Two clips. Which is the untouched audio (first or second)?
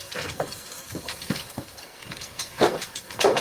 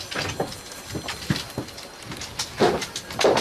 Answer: second